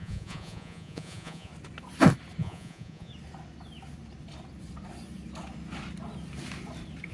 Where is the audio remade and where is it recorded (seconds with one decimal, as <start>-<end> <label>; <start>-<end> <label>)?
0.0-1.5 remade; 1.5-2.4 recorded; 2.4-3.1 remade; 3.1-7.1 recorded

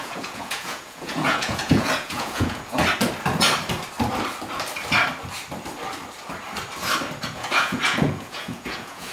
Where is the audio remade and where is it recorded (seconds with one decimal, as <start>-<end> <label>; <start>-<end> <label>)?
0.0-2.8 remade; 2.8-7.3 recorded; 7.3-9.1 remade

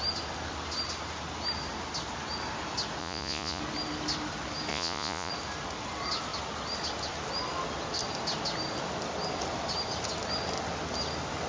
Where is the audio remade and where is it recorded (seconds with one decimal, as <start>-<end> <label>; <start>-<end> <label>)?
0.0-3.0 recorded; 3.0-3.6 remade; 3.6-4.7 recorded; 4.7-5.3 remade; 5.3-11.5 recorded

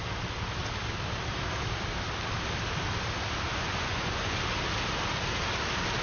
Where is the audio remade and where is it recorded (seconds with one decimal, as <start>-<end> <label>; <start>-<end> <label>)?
0.0-3.5 recorded; 3.5-4.4 remade; 4.4-6.0 recorded

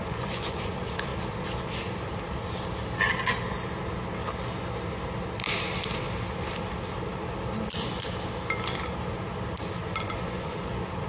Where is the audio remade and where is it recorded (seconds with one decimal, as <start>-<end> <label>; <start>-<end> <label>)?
0.0-0.7 remade; 0.7-9.8 recorded; 9.8-10.7 remade; 10.7-11.1 recorded

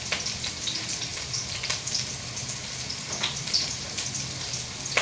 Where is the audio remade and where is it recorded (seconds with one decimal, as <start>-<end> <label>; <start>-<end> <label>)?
0.0-5.0 recorded

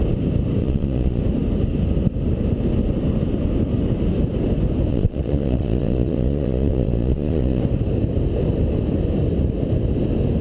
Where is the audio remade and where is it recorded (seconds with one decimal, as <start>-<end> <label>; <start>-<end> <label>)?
0.0-0.6 recorded; 0.6-1.2 remade; 1.2-4.9 recorded; 4.9-7.6 remade; 7.6-10.4 recorded

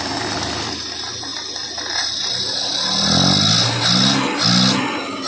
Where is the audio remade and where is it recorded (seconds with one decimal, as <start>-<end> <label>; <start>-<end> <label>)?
0.0-5.3 recorded